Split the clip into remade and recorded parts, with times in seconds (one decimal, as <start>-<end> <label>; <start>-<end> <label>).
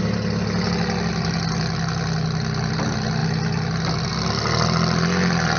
0.0-5.6 recorded